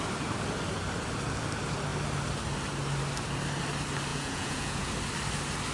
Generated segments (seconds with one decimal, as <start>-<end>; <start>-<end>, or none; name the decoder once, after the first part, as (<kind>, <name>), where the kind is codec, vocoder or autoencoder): 4.1-4.9 (vocoder, Vocos)